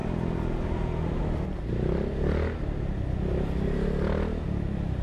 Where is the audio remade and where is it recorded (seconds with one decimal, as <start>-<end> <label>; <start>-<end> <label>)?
0.0-5.0 recorded

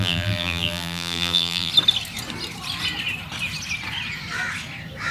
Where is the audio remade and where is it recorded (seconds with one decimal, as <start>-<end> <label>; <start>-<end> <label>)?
0.0-1.7 remade; 1.7-5.1 recorded

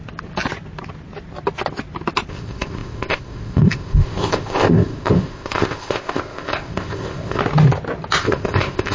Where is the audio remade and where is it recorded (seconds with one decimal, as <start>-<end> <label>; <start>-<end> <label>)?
0.0-2.3 recorded; 2.3-7.4 remade; 7.4-8.2 recorded; 8.2-8.9 remade

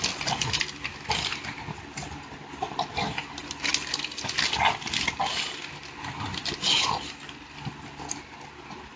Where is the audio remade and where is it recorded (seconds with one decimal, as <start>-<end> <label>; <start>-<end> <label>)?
0.0-9.0 recorded

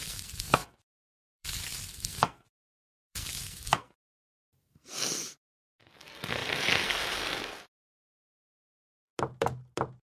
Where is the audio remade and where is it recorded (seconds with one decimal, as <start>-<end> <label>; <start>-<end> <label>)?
0.0-9.1 remade; 9.1-10.0 recorded

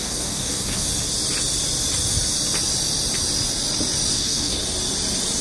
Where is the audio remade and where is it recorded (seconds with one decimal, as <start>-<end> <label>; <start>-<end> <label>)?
0.0-0.9 remade; 0.9-4.1 recorded; 4.1-4.6 remade; 4.6-5.4 recorded